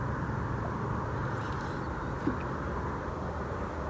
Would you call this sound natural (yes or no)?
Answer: yes